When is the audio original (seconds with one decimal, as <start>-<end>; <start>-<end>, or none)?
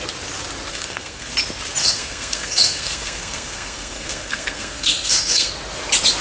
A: 0.0-0.7; 1.3-1.8; 5.5-6.2